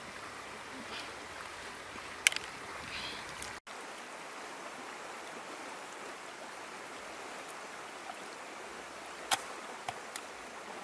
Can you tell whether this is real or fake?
real